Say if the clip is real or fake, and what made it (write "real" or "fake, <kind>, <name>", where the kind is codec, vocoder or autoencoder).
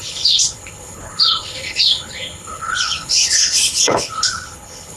fake, codec, HILCodec